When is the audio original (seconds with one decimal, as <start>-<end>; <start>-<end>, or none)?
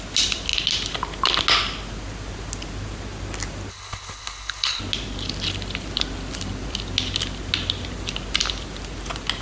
0.0-3.7; 4.8-9.4